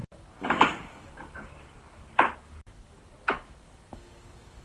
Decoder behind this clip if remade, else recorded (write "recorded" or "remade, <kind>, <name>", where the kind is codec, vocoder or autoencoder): remade, codec, DAC